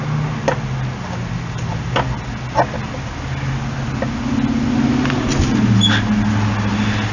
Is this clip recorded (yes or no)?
yes